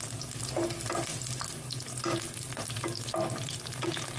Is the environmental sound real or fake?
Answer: real